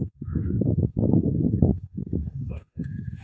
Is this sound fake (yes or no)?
yes